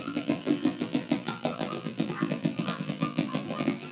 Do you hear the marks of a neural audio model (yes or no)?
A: yes